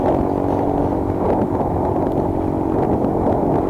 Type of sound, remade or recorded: recorded